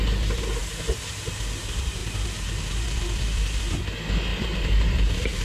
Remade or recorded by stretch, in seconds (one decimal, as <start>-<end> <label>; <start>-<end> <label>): 0.0-2.0 recorded; 2.0-3.0 remade; 3.0-4.3 recorded; 4.3-5.4 remade